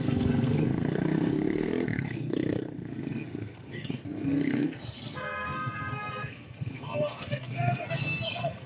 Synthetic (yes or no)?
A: yes